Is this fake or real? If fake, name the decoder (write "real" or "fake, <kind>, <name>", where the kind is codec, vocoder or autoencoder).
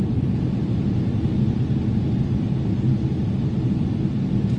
real